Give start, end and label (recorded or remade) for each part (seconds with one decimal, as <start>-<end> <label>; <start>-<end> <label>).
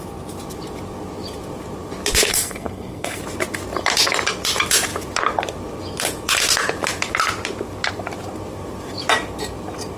0.0-2.3 recorded; 2.3-3.2 remade; 3.2-10.0 recorded